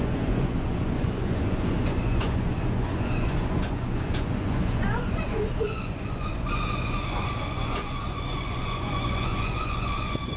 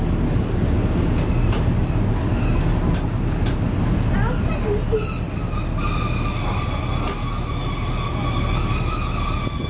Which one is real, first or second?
second